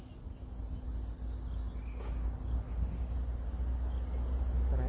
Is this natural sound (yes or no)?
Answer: yes